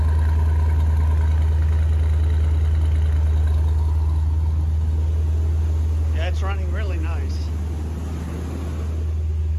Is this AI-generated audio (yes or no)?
no